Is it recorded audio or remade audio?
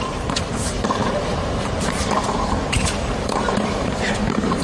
remade